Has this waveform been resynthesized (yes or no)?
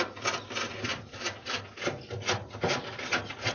no